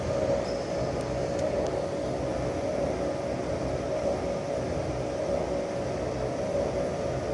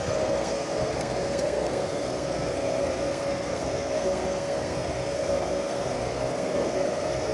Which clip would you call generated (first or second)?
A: second